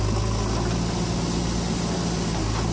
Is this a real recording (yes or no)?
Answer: yes